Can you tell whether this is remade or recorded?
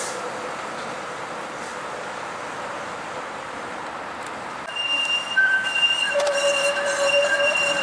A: remade